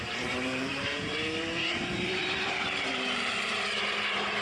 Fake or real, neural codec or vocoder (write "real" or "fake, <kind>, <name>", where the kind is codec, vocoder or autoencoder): fake, vocoder, BigVGAN v2